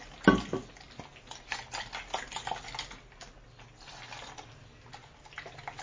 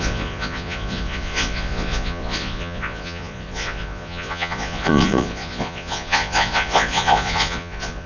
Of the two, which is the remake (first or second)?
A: second